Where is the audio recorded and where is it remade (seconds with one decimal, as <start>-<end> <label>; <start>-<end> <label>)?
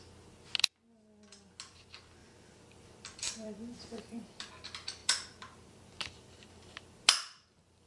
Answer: 0.0-2.2 recorded; 2.2-4.5 remade; 4.5-5.0 recorded; 5.0-7.9 remade